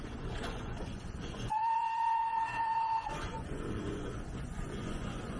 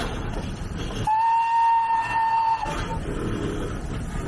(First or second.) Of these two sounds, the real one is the second